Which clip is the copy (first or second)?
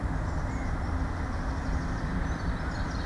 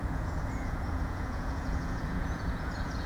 second